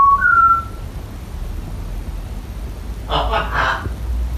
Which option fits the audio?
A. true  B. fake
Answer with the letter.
A